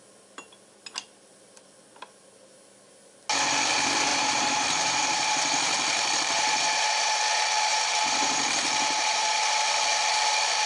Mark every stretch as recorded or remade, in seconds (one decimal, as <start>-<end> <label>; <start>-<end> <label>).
0.0-4.1 recorded; 4.1-7.2 remade; 7.2-7.7 recorded; 7.7-9.7 remade; 9.7-10.7 recorded